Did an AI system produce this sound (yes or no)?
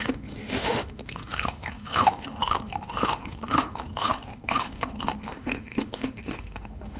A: yes